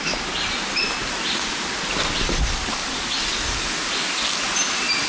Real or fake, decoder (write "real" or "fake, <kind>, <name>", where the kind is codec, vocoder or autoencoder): real